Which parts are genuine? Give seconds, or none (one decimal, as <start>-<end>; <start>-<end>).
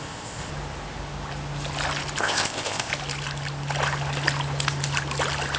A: 0.5-2.2; 2.9-5.6